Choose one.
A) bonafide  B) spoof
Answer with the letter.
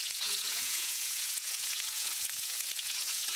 B